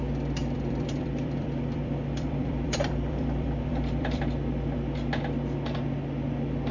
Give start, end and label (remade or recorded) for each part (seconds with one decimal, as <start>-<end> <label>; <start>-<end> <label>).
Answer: 0.0-0.4 recorded; 0.4-4.2 remade; 4.2-6.7 recorded

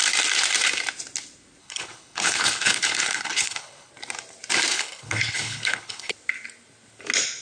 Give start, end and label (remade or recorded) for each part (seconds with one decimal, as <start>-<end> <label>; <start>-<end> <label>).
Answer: 0.0-1.6 recorded; 1.6-3.9 remade; 3.9-4.7 recorded; 4.7-6.1 remade; 6.1-7.4 recorded

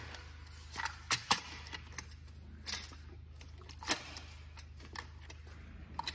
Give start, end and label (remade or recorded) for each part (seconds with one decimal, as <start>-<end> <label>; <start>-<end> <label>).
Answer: 0.0-6.1 recorded

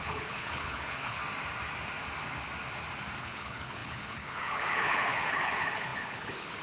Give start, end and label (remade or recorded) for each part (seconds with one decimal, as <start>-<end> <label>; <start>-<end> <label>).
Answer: 0.0-1.2 remade; 1.2-3.2 recorded; 3.2-6.6 remade

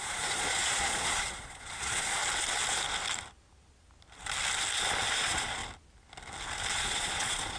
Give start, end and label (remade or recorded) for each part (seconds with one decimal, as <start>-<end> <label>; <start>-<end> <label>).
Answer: 0.0-2.2 remade; 2.2-5.1 recorded; 5.1-5.6 remade; 5.6-6.7 recorded; 6.7-7.6 remade